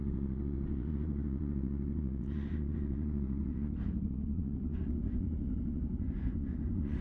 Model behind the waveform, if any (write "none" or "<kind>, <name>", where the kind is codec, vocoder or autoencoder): vocoder, Vocos